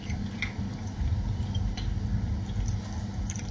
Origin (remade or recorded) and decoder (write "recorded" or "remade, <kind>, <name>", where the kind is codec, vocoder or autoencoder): recorded